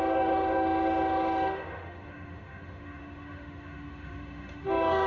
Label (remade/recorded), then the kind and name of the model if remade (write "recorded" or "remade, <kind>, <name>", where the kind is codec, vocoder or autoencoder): remade, autoencoder, DAC-VAE